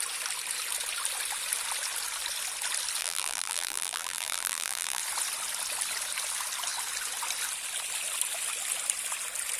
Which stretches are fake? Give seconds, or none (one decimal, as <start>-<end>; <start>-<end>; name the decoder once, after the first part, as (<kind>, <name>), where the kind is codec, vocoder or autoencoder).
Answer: 3.0-5.0 (vocoder, BigVGAN v2)